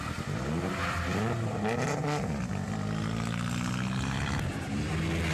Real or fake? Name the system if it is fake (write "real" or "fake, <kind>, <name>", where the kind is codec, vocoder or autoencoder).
real